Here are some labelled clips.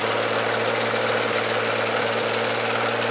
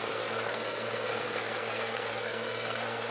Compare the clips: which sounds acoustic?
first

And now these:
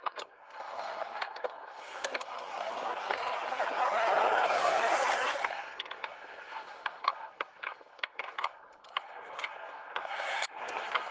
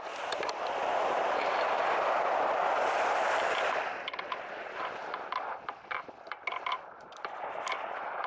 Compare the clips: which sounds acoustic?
second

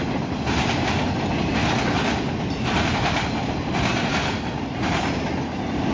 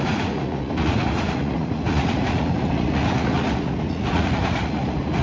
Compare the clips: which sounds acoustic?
first